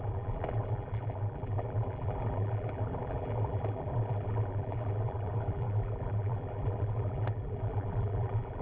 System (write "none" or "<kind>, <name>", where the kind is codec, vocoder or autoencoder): vocoder, BigVGAN v2